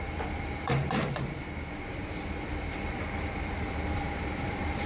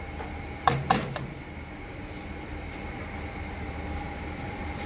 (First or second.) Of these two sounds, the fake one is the first